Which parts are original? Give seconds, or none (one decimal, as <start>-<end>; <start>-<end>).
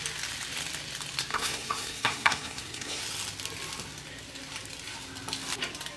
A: 0.0-1.3; 3.0-6.0